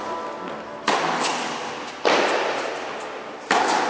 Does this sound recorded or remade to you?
recorded